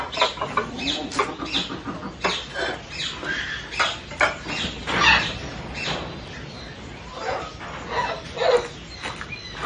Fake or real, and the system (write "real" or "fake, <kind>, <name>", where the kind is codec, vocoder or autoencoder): real